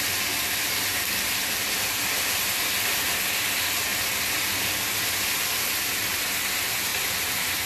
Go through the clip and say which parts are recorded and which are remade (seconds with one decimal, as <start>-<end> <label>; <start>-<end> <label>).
0.0-7.7 recorded